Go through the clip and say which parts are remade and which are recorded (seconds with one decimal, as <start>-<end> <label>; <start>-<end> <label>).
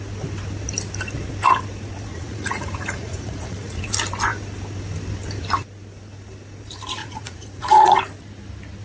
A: 0.0-2.1 recorded; 2.1-3.8 remade; 3.8-7.0 recorded; 7.0-8.0 remade; 8.0-8.8 recorded